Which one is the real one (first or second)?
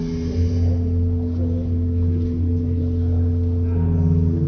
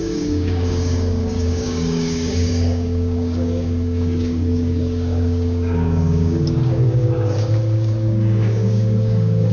first